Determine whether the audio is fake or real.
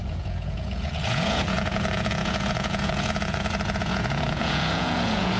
fake